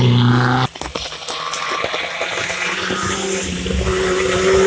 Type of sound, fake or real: real